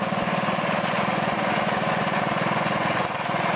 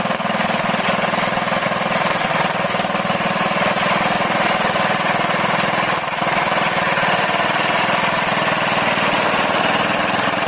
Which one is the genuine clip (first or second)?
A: second